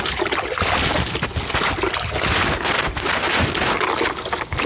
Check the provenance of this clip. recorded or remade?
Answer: recorded